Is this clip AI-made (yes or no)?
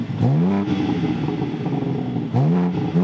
no